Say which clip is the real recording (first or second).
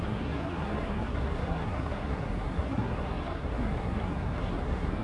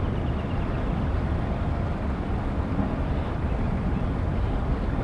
second